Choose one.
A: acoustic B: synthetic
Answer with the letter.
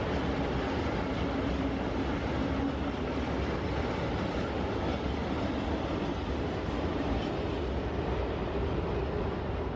A